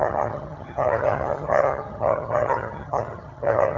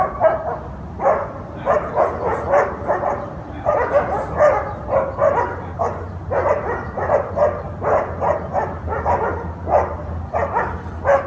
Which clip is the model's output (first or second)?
first